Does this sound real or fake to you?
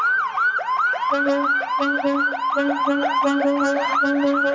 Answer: real